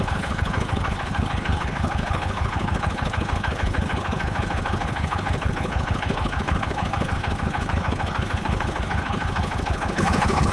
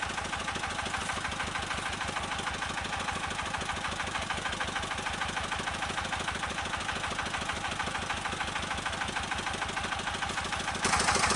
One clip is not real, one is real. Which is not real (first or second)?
first